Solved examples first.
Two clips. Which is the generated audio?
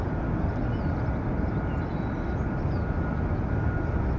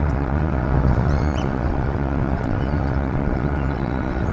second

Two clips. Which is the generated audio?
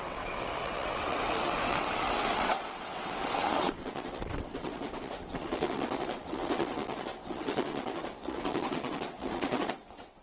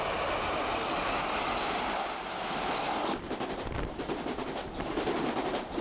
first